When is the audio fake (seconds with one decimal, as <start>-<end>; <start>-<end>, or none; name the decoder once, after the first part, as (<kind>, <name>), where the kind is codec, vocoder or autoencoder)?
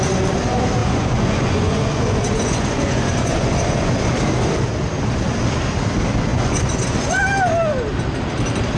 0.8-4.0 (vocoder, Vocos); 6.3-7.2